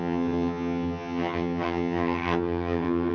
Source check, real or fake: fake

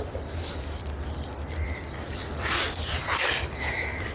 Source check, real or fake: real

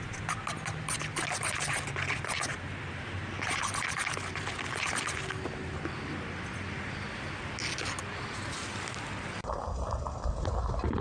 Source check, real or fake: real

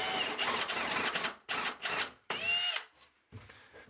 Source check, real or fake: real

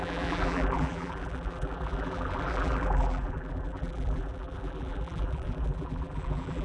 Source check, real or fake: fake